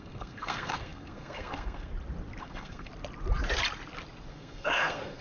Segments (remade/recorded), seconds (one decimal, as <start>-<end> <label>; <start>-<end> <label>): 0.0-1.9 remade; 1.9-2.4 recorded; 2.4-2.9 remade; 2.9-4.3 recorded; 4.3-5.2 remade